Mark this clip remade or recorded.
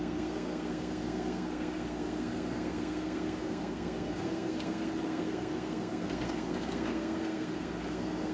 remade